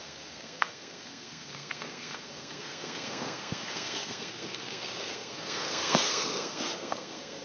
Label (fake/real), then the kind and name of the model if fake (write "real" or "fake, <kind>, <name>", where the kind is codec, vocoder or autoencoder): fake, codec, SNAC